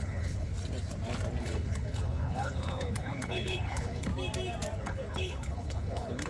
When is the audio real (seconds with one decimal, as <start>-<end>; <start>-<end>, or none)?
0.5-1.4; 4.1-4.8

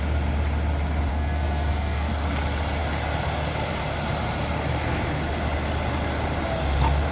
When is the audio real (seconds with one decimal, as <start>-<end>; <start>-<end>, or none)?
0.0-1.1; 2.1-7.1